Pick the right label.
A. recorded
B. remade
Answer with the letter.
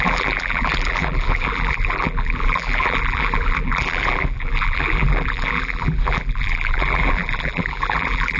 B